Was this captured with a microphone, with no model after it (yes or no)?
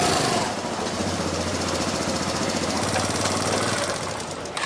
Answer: no